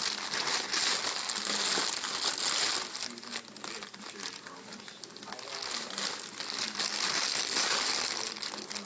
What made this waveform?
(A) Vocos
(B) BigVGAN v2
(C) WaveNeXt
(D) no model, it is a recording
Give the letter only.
D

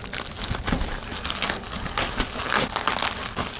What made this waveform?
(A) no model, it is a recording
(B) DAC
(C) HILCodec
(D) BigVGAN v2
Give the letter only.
A